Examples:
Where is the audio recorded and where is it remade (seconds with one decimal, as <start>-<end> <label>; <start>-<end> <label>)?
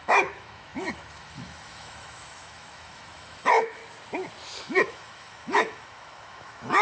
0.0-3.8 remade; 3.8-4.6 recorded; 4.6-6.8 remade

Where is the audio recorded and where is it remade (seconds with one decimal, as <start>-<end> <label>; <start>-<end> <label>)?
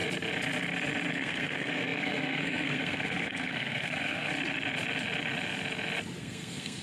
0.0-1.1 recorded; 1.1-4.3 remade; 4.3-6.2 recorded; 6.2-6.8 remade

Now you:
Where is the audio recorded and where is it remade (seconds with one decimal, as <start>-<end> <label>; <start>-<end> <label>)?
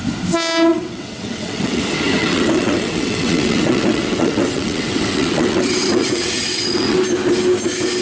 0.0-0.7 recorded; 0.7-1.8 remade; 1.8-2.2 recorded; 2.2-7.0 remade; 7.0-8.0 recorded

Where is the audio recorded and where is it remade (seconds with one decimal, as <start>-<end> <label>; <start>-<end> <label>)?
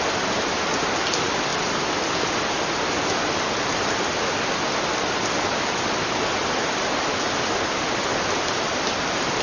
0.0-9.4 recorded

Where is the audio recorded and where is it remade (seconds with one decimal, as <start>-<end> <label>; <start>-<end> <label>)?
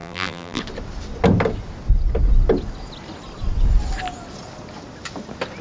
0.0-0.6 remade; 0.6-5.6 recorded